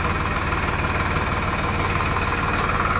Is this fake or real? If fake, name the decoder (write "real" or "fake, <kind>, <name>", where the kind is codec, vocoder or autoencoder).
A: real